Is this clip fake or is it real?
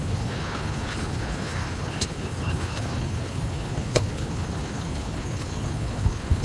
fake